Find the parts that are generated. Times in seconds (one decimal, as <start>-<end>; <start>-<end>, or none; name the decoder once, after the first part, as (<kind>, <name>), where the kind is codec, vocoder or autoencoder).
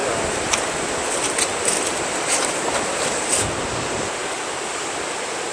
none